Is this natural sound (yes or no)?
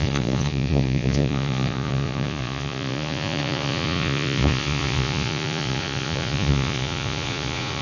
no